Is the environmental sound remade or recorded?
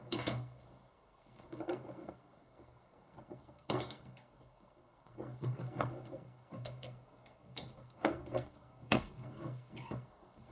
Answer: remade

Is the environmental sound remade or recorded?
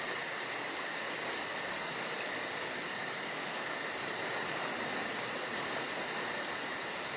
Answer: recorded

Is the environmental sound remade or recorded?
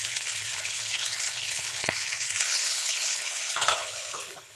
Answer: remade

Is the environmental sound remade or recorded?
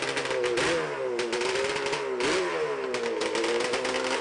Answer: recorded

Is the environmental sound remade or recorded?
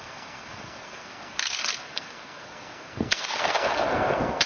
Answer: remade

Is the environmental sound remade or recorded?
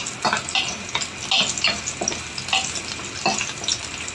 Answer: recorded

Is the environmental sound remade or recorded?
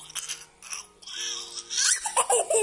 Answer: recorded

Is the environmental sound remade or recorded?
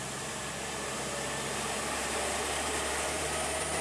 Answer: remade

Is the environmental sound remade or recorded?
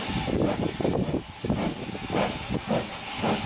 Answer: recorded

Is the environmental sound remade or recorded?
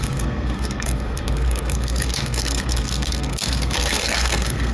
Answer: remade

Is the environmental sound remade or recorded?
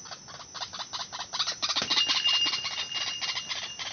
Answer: recorded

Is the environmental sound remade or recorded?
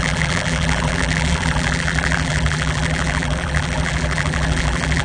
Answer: remade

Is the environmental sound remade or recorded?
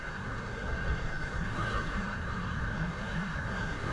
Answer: remade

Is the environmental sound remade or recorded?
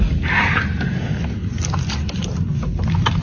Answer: recorded